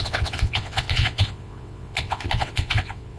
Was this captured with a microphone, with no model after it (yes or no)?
no